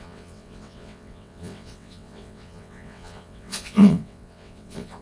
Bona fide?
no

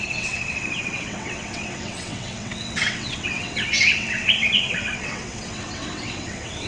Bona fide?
no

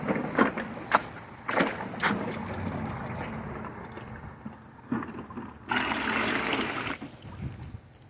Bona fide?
yes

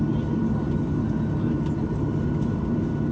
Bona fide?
yes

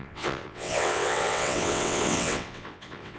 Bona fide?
no